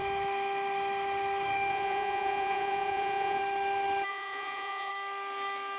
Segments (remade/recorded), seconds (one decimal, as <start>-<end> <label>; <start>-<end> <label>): 0.0-1.7 recorded; 1.7-3.4 remade; 3.4-4.1 recorded; 4.1-4.9 remade; 4.9-5.8 recorded